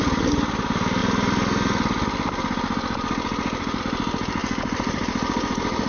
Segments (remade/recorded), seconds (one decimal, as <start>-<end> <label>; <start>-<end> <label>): 0.0-5.9 recorded